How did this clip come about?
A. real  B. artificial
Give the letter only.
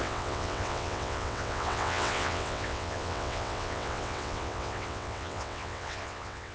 B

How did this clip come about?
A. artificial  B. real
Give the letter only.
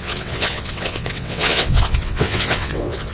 A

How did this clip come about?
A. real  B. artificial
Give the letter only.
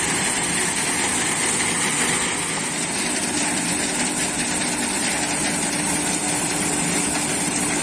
A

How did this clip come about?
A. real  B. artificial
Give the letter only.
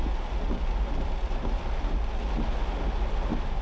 A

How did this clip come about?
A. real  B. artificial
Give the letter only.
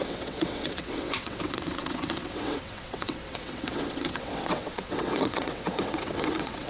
B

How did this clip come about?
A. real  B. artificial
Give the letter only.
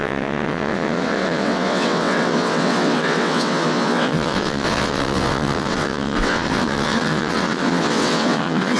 B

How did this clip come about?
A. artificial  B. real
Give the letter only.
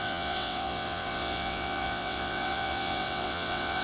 A